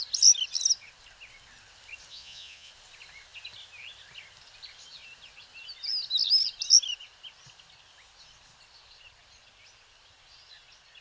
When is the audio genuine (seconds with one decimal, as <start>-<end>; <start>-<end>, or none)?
0.0-2.1; 2.7-11.0